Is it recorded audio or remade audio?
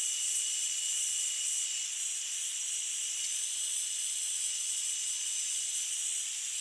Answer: remade